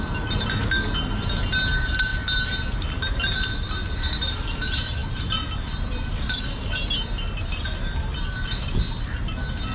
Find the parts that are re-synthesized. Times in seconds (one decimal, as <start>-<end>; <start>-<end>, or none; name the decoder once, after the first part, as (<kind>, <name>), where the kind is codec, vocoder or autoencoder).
none

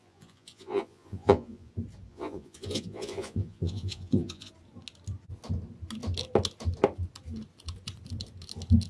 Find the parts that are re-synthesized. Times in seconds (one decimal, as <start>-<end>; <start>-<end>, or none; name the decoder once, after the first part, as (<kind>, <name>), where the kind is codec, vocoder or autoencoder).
0.0-1.7 (vocoder, Vocos); 2.1-4.5

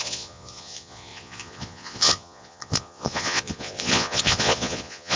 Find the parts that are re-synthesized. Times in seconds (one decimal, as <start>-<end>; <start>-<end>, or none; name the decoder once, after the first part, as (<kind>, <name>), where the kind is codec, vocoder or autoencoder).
0.0-5.2 (vocoder, Vocos)

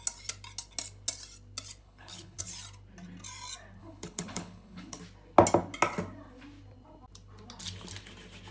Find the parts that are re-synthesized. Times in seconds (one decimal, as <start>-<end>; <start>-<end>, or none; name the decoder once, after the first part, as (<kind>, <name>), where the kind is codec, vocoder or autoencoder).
1.8-2.4 (codec, HILCodec); 3.8-5.0

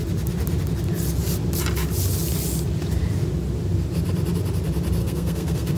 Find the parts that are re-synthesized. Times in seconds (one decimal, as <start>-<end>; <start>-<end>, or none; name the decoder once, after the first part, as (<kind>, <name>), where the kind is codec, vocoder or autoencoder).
5.0-5.8 (codec, SNAC)

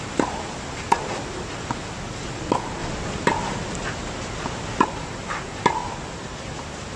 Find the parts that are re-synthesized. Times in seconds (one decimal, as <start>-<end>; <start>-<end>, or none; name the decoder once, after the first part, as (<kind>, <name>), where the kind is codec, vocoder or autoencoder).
0.0-2.8 (vocoder, BigVGAN v2); 4.8-5.8; 6.6-7.0